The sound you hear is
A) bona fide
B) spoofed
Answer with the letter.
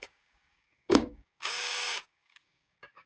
B